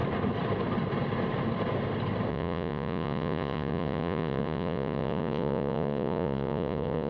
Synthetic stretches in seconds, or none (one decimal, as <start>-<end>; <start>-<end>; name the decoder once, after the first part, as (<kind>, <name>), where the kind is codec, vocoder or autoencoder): 2.3-7.1 (vocoder, Vocos)